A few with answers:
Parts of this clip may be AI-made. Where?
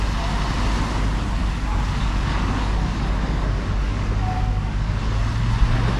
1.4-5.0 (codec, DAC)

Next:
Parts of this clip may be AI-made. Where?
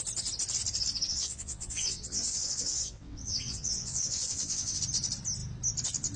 1.1-4.8 (vocoder, WaveNeXt)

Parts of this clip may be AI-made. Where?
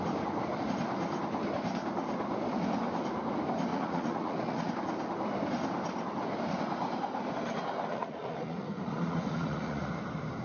3.7-4.7 (vocoder, Vocos); 7.9-9.9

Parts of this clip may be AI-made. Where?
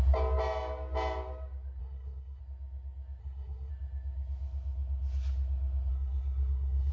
1.8-2.4 (codec, SNAC); 3.2-3.7; 5.9-6.9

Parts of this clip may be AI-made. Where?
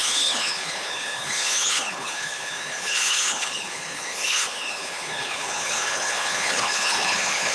0.0-7.5 (codec, HILCodec)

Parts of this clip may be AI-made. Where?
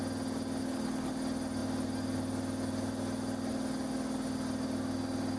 0.6-1.1 (codec, HILCodec)